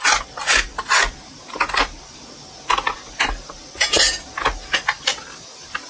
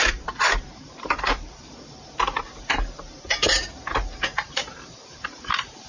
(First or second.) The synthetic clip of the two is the second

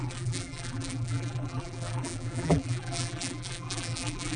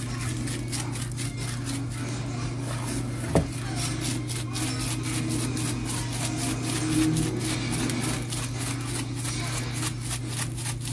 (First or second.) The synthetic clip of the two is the first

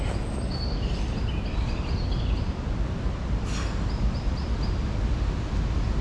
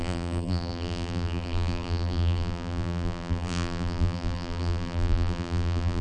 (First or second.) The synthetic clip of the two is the second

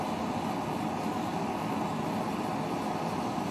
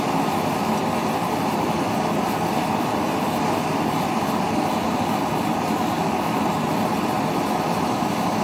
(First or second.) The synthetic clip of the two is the second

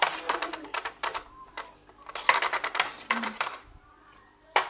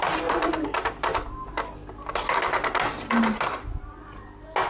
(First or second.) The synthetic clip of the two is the first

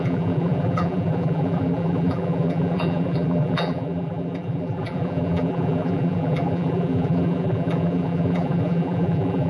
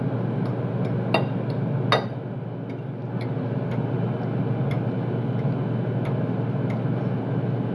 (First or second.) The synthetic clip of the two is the first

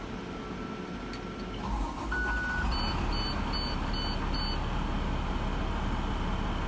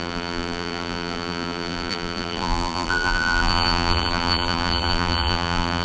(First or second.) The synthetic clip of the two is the second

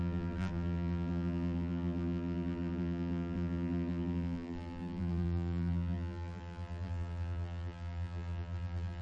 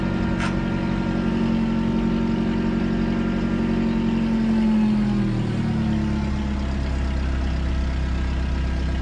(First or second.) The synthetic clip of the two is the first